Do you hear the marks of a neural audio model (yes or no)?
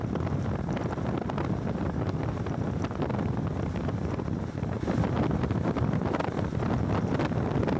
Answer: no